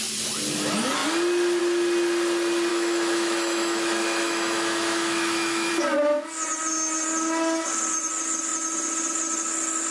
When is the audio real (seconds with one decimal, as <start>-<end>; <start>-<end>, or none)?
0.0-2.7; 5.7-9.9